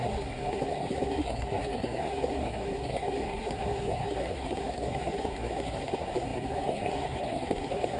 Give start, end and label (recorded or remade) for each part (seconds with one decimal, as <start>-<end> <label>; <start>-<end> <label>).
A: 0.0-8.0 remade